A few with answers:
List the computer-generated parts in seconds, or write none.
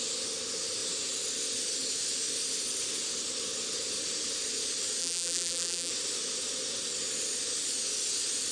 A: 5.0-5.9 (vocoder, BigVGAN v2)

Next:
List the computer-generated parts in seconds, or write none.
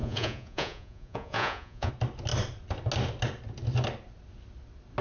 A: 0.0-1.9 (vocoder, Vocos)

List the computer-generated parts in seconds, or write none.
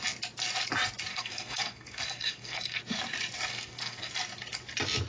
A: 1.1-2.8 (codec, SNAC); 3.5-4.1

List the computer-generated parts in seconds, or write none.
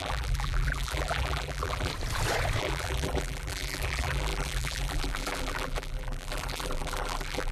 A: 0.0-1.9 (vocoder, BigVGAN v2); 2.6-7.5